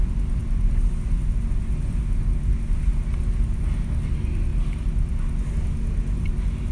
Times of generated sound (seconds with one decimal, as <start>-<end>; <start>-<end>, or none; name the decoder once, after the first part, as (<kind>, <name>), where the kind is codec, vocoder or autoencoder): none